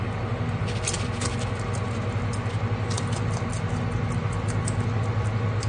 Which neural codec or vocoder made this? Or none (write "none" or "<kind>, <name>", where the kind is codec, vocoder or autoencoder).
none